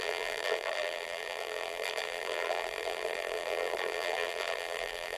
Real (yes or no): no